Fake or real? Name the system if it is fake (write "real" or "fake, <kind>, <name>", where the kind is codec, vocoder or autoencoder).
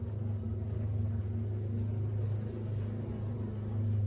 real